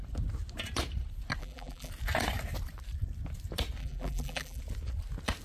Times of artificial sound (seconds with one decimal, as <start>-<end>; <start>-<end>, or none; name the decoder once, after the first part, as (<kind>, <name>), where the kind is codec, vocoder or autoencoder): 1.4-1.9 (vocoder, BigVGAN v2); 3.8-4.6